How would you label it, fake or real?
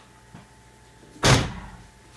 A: real